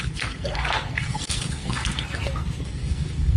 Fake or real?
fake